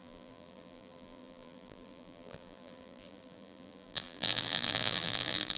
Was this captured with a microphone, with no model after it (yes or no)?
no